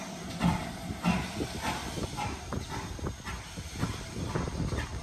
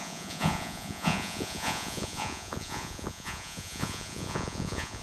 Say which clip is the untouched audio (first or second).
first